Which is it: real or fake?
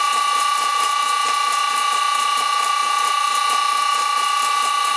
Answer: real